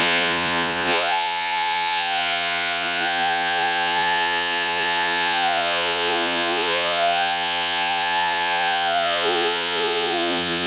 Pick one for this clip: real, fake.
fake